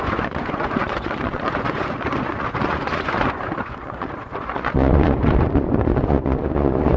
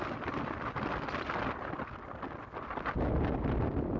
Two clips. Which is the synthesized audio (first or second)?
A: first